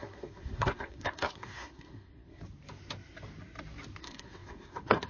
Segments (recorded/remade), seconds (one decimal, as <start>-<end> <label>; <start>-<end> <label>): 0.0-2.4 remade; 2.4-4.0 recorded; 4.0-5.1 remade